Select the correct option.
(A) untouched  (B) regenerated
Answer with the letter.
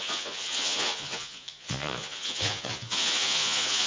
B